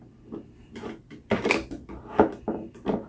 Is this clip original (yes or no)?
no